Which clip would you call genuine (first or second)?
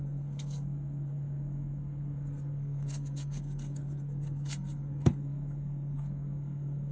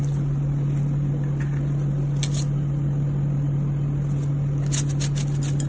second